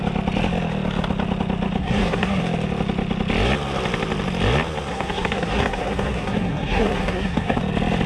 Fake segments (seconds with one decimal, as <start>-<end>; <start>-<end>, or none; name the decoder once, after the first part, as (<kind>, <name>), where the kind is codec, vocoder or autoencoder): 1.8-2.4 (codec, SNAC); 4.9-7.6